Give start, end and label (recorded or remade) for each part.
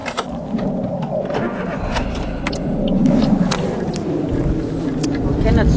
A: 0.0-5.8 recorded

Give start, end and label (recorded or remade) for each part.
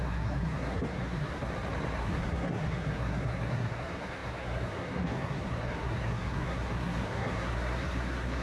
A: 0.0-1.5 remade; 1.5-2.0 recorded; 2.0-8.4 remade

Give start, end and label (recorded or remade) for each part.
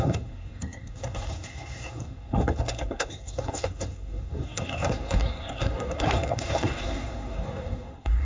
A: 0.0-8.2 remade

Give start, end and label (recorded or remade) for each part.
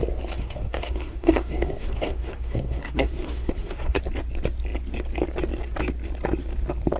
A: 0.0-0.4 recorded; 0.4-4.0 remade; 4.0-7.0 recorded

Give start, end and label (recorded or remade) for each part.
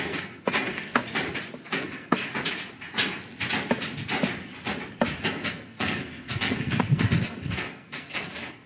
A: 0.0-1.0 remade; 1.0-1.7 recorded; 1.7-2.3 remade; 2.3-5.2 recorded; 5.2-8.7 remade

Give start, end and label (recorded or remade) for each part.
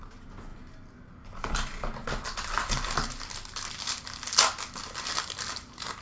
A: 0.0-6.0 recorded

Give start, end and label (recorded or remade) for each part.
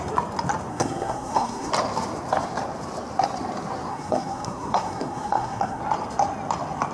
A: 0.0-0.7 recorded; 0.7-1.7 remade; 1.7-3.9 recorded; 3.9-5.8 remade; 5.8-6.9 recorded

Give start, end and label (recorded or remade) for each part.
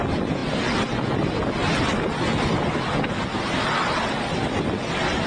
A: 0.0-5.3 recorded